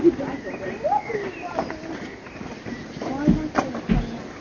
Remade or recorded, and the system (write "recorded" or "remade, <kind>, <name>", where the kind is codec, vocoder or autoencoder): recorded